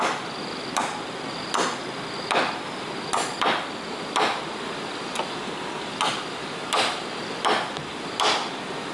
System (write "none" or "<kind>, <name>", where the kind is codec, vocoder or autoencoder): none